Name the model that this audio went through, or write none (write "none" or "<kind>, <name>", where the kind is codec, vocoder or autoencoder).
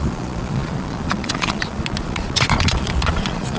vocoder, Vocos